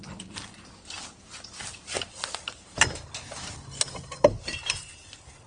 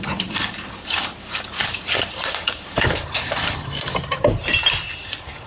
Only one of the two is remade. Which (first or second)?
second